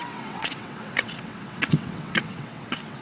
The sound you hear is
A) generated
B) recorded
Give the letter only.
A